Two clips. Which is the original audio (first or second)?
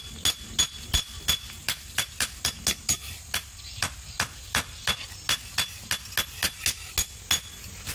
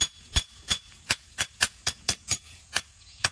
first